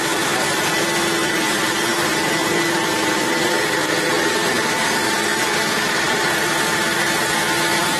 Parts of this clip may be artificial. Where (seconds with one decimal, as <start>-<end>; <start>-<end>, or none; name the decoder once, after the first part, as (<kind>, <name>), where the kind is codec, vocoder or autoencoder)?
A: 5.4-7.0 (vocoder, BigVGAN v2)